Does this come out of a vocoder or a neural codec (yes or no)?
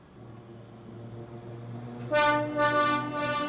no